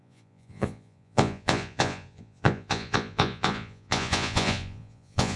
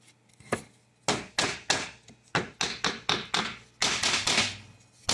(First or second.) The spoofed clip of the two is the first